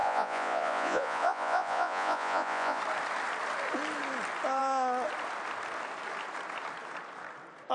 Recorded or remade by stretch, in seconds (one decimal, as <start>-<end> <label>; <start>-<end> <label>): 0.0-2.8 remade; 2.8-7.7 recorded